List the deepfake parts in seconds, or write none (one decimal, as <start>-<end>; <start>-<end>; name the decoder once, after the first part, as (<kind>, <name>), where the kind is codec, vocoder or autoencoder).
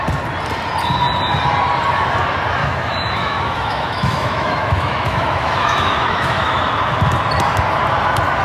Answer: 2.6-6.6 (autoencoder, DAC-VAE)